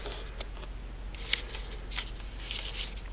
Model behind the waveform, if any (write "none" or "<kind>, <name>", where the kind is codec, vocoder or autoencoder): none